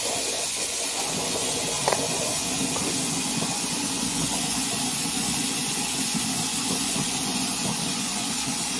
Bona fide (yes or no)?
no